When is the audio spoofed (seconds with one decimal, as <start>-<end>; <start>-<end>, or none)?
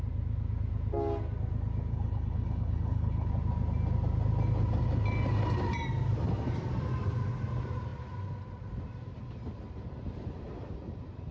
1.9-3.3